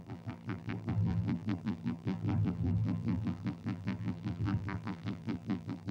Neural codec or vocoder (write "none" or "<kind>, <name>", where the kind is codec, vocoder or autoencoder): vocoder, BigVGAN v2